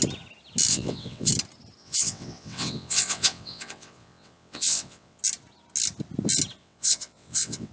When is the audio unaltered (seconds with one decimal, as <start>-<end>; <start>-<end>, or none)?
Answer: 0.0-0.7; 1.3-1.8; 5.2-6.6